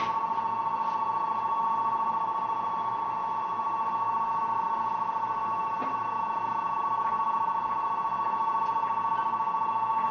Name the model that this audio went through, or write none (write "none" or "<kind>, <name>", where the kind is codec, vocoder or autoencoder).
none